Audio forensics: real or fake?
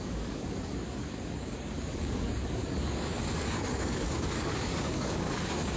fake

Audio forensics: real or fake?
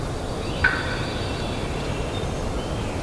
real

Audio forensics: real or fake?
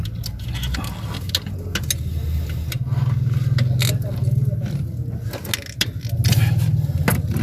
real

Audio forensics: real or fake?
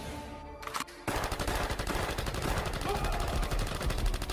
real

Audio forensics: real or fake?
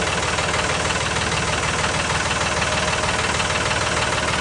real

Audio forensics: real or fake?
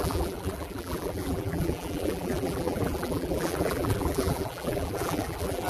fake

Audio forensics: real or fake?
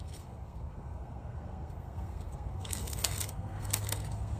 fake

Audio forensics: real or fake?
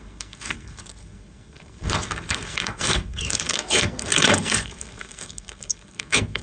fake